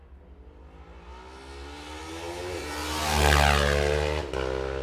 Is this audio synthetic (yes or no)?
no